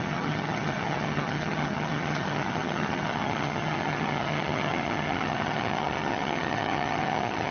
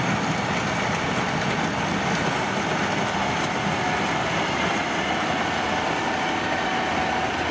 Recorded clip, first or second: second